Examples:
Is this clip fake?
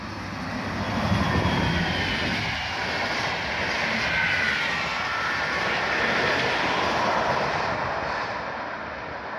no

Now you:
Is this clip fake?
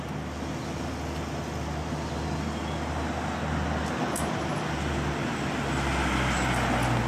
no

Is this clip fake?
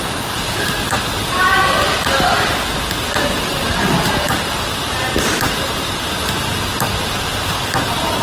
no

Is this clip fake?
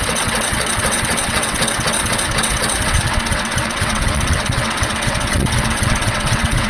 yes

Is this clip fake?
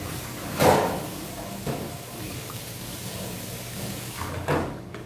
yes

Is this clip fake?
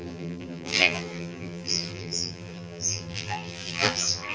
yes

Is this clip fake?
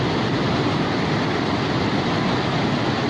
no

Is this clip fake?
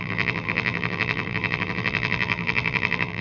yes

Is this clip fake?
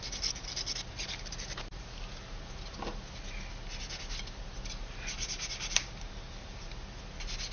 no